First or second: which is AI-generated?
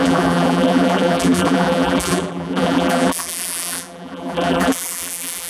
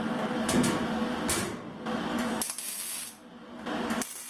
first